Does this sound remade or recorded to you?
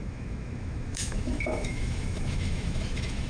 remade